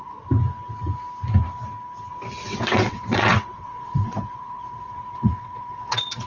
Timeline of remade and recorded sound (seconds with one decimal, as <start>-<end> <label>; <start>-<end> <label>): 0.0-2.4 recorded; 2.4-6.3 remade